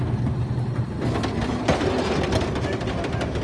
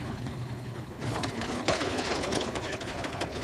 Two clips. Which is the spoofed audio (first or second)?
second